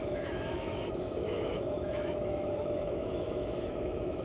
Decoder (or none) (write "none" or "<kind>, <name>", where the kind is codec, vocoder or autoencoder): autoencoder, DAC-VAE